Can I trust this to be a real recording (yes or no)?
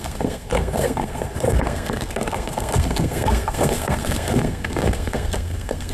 no